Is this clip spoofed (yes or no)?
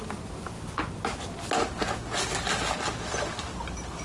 no